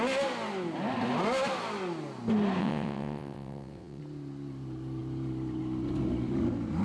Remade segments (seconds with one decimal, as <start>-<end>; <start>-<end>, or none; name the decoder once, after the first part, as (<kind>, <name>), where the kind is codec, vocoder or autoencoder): 2.6-4.0 (vocoder, WaveNeXt)